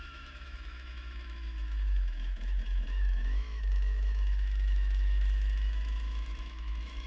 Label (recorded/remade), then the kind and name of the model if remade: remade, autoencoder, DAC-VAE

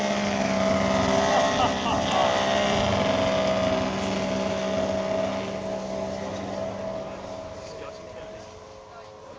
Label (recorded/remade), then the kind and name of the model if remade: recorded